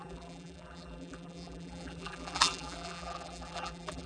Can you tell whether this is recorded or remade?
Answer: remade